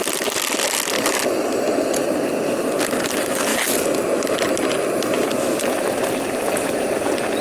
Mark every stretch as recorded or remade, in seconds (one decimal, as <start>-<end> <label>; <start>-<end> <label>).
0.0-7.4 recorded